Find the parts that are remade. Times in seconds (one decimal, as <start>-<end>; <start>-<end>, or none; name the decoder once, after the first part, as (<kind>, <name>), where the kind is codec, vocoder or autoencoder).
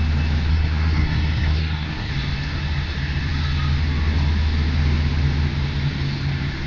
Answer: 0.5-2.1 (codec, SNAC)